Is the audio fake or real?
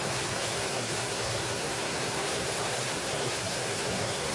fake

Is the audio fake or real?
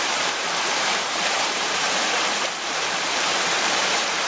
fake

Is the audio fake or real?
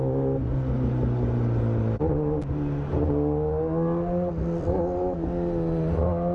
real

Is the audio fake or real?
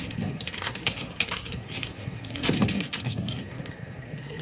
fake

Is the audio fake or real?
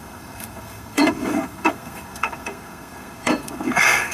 fake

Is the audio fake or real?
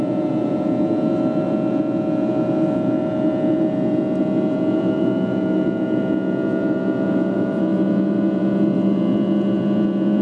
fake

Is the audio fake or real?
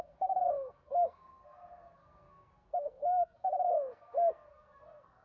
fake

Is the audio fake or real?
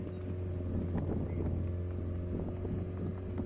real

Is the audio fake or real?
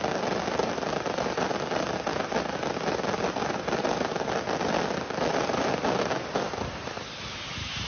real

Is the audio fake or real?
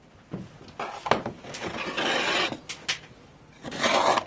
real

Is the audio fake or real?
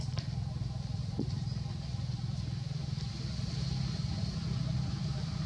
real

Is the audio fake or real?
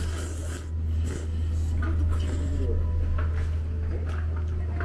real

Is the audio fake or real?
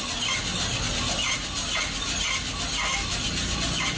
real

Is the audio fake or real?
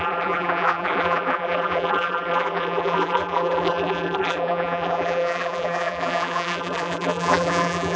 fake